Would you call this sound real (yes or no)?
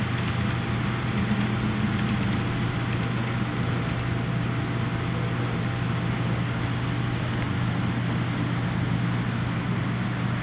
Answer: yes